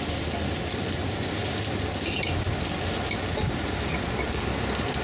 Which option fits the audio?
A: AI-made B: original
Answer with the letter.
B